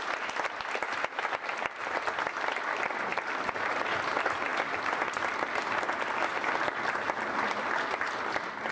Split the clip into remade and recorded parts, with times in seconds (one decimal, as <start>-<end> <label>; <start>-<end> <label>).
0.0-3.1 recorded; 3.1-4.0 remade; 4.0-6.3 recorded; 6.3-6.8 remade; 6.8-8.7 recorded